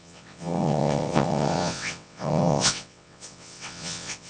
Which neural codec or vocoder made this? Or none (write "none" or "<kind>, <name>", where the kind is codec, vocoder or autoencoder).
vocoder, WaveNeXt